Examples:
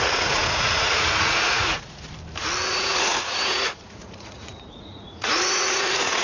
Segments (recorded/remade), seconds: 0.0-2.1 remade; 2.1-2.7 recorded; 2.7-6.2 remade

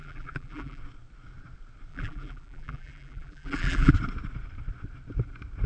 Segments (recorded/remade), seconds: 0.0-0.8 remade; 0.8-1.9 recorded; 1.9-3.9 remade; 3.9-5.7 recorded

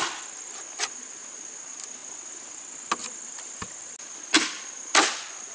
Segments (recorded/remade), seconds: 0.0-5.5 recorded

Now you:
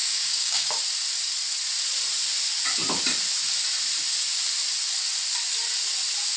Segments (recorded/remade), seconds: 0.0-0.8 remade; 0.8-6.4 recorded

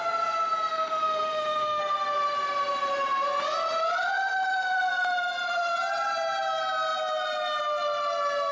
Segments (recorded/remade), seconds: 0.0-0.7 recorded; 0.7-1.8 remade; 1.8-8.5 recorded